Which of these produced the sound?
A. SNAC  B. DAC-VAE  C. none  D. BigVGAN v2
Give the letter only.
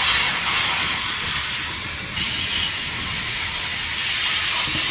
C